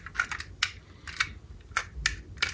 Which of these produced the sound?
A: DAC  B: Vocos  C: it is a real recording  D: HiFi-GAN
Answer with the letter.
C